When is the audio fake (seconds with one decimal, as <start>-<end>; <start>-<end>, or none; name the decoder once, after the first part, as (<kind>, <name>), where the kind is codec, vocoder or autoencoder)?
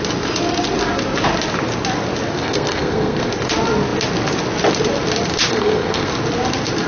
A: 2.4-3.3 (codec, SNAC); 5.5-6.1